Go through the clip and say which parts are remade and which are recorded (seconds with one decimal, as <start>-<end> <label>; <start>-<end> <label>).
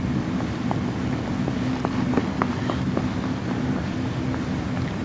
0.0-5.0 recorded